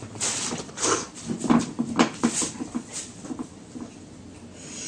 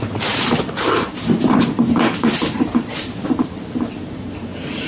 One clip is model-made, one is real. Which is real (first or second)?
first